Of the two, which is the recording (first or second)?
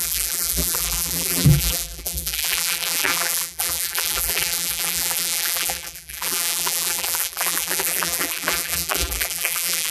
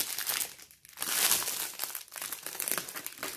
second